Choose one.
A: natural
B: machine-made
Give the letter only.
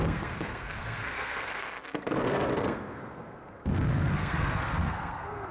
B